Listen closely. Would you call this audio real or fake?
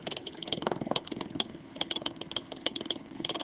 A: fake